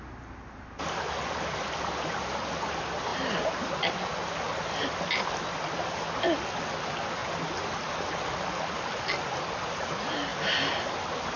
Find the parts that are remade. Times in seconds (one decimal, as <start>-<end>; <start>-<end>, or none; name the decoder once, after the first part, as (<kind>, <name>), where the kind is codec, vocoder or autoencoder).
none